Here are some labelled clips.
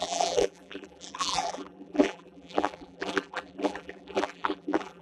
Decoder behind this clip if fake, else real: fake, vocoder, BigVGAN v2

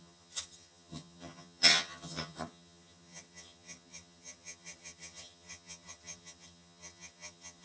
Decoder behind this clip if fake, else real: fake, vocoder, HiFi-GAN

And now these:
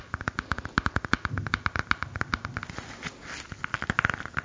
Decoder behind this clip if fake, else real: real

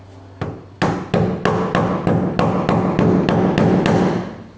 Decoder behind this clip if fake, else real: real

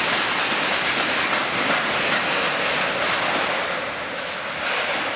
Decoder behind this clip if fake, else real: real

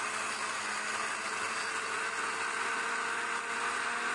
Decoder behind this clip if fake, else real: real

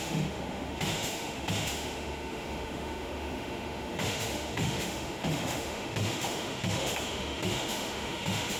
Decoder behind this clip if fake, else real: fake, autoencoder, DAC-VAE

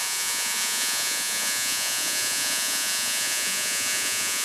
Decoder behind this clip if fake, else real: fake, vocoder, Vocos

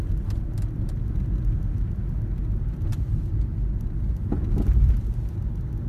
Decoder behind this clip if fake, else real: real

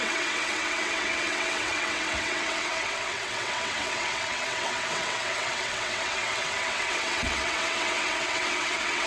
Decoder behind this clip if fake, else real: fake, vocoder, WaveNeXt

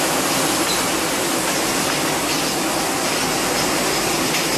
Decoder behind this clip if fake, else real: real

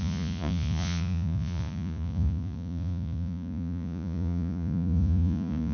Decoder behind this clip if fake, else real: fake, vocoder, Vocos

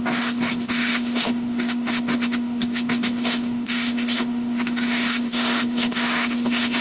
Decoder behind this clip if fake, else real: fake, autoencoder, DAC-VAE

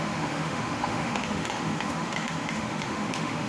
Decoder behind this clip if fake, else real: fake, autoencoder, DAC-VAE